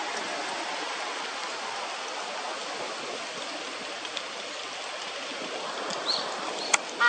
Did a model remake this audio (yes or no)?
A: no